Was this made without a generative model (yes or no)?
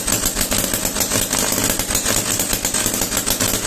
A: yes